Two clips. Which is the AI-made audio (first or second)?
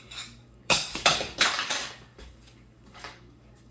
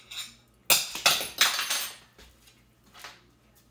first